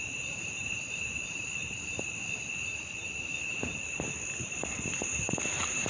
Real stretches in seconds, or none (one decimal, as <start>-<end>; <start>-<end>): 2.2-4.9